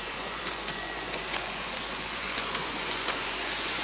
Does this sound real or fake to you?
fake